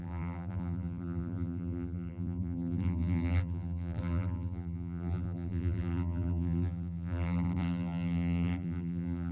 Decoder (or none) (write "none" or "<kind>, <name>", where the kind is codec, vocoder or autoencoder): vocoder, BigVGAN v2